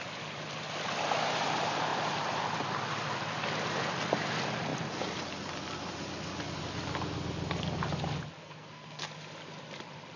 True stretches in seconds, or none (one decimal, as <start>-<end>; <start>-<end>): 0.0-8.4; 9.1-10.2